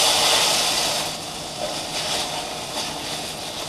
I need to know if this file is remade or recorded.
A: recorded